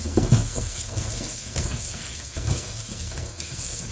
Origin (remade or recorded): remade